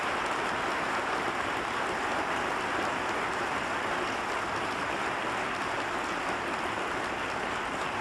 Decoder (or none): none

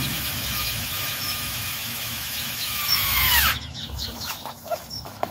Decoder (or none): autoencoder, DAC-VAE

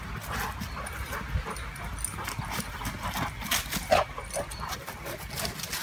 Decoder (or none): none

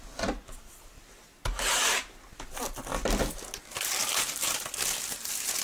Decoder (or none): none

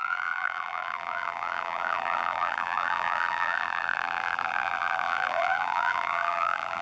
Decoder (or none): vocoder, BigVGAN v2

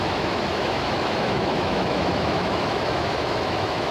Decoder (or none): autoencoder, DAC-VAE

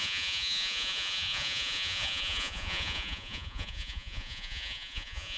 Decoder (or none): vocoder, Vocos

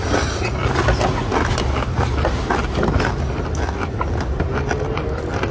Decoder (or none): none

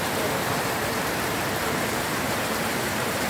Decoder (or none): vocoder, BigVGAN v2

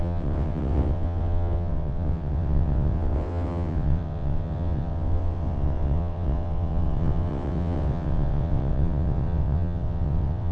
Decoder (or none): vocoder, WaveNeXt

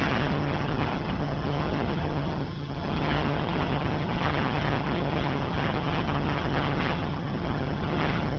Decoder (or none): vocoder, HiFi-GAN